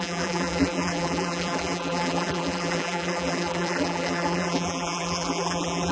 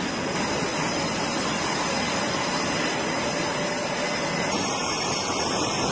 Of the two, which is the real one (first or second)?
second